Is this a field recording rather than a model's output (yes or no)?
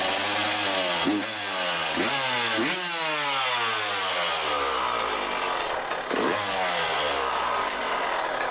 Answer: yes